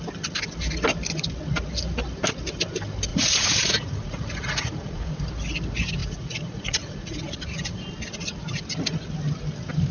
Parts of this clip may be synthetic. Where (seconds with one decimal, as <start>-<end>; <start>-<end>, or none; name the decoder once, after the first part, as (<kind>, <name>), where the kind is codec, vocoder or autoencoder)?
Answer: 3.1-5.2 (vocoder, Vocos); 6.0-7.9